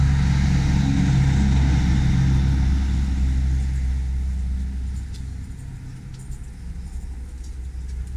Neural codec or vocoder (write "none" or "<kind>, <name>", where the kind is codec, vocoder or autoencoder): none